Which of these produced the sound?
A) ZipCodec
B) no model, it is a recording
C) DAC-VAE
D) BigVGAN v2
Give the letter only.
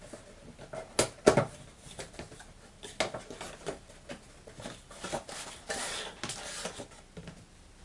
B